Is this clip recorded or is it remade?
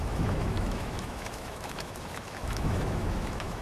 remade